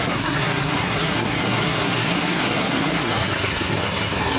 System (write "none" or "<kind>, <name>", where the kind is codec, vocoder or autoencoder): codec, SNAC